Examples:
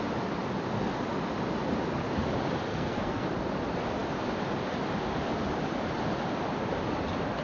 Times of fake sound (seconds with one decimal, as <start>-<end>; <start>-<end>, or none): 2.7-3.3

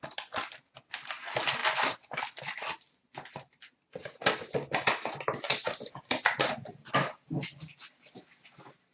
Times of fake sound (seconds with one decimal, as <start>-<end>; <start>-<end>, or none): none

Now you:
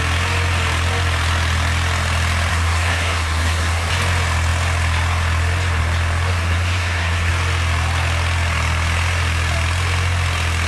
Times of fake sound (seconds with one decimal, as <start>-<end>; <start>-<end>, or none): 2.5-3.9; 6.3-7.3

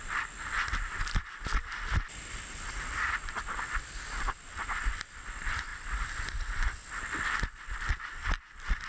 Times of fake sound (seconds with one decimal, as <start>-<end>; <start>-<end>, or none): none

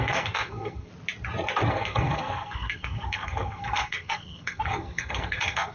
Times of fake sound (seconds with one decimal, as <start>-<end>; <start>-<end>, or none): 0.0-0.9; 1.7-5.7

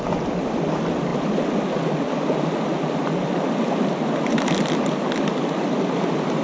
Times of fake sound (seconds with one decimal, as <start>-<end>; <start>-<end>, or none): none